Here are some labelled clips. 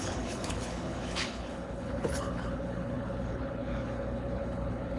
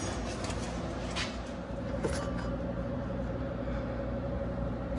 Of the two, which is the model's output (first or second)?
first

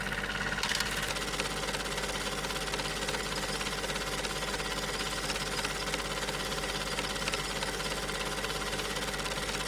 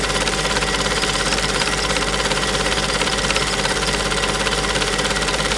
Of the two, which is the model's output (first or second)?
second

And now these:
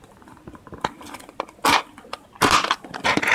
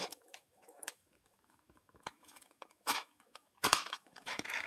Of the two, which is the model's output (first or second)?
second